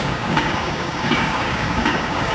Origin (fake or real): fake